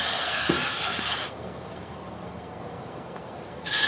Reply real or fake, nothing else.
fake